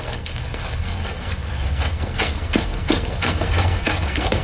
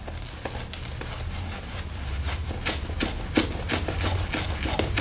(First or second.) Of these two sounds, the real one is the second